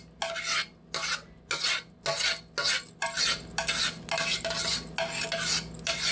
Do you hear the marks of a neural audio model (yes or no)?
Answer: no